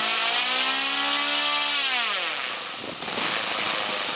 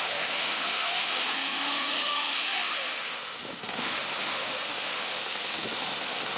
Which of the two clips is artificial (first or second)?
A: second